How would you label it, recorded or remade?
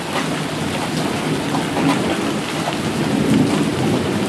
recorded